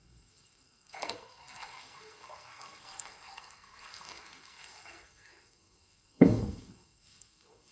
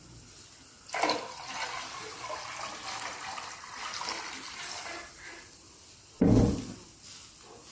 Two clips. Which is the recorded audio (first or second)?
second